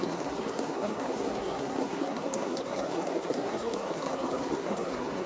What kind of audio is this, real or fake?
fake